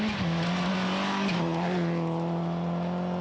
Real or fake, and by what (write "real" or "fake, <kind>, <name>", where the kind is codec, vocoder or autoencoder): real